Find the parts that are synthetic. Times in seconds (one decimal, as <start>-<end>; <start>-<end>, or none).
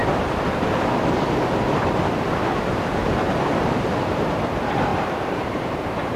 2.8-6.2